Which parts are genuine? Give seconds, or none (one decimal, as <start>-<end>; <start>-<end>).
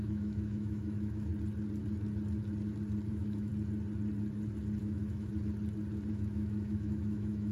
1.3-3.1; 3.5-4.8; 5.3-6.1